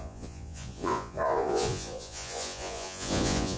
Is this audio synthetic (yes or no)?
yes